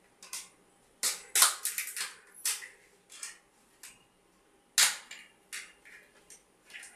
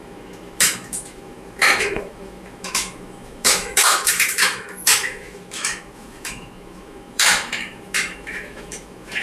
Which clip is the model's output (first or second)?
second